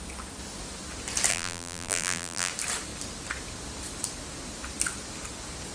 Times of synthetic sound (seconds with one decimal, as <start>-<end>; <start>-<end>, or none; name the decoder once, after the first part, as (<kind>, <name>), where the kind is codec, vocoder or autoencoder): 1.3-2.5 (vocoder, BigVGAN v2)